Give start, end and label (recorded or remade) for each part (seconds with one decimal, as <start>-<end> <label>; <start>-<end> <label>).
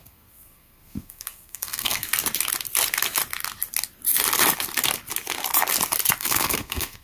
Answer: 0.0-2.1 remade; 2.1-6.2 recorded; 6.2-7.0 remade